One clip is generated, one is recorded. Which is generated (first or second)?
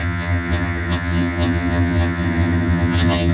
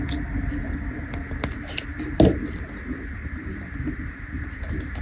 first